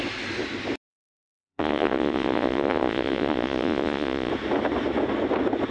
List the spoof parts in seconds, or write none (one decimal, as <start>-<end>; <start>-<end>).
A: 0.9-4.3